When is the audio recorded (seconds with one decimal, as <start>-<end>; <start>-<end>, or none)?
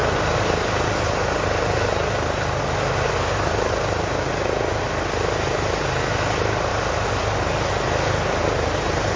0.0-9.2